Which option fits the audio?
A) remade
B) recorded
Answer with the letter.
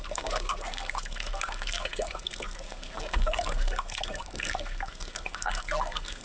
A